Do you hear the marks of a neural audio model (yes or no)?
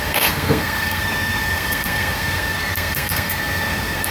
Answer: yes